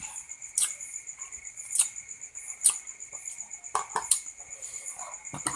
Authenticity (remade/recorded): remade